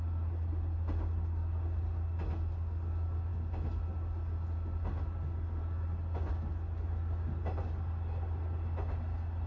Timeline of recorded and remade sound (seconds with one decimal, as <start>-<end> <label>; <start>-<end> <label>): 0.0-9.5 recorded

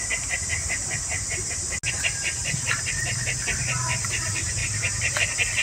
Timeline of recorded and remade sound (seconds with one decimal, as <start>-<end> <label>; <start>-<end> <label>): 0.0-2.4 recorded; 2.4-3.3 remade; 3.3-4.6 recorded; 4.6-5.1 remade; 5.1-5.6 recorded

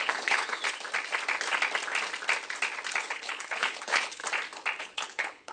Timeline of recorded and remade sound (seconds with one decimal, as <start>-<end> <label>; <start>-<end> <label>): 0.0-0.6 remade; 0.6-3.0 recorded; 3.0-4.2 remade; 4.2-4.8 recorded; 4.8-5.5 remade

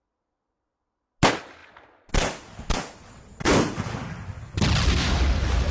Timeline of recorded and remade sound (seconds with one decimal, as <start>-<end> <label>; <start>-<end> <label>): 0.0-5.7 recorded